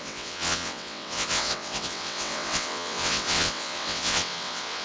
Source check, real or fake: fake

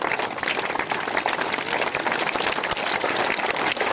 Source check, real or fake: real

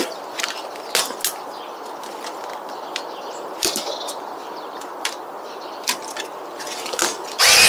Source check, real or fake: real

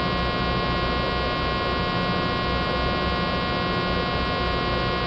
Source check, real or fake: real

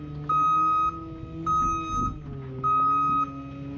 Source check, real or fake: real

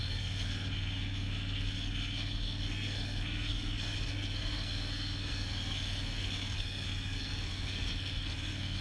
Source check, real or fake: fake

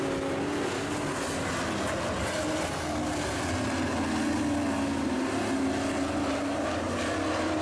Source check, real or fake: real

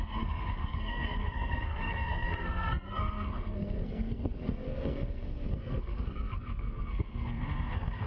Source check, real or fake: fake